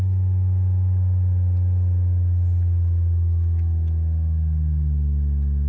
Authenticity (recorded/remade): recorded